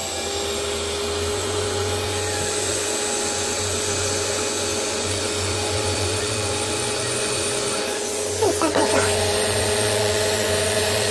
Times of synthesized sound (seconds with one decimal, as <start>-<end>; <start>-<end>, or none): 1.3-11.1